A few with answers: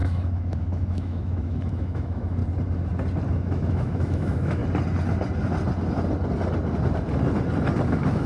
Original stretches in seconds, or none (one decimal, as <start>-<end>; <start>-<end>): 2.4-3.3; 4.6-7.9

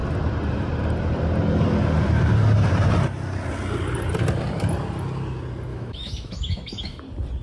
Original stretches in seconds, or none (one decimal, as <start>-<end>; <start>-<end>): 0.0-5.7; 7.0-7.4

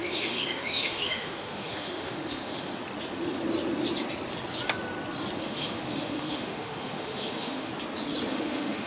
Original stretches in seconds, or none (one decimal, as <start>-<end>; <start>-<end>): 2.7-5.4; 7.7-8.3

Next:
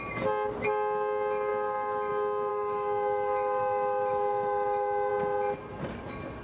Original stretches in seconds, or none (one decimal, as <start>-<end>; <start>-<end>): 0.0-2.5; 5.1-6.4